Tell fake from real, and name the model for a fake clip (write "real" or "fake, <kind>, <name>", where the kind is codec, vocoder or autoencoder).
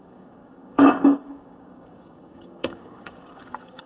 fake, codec, DAC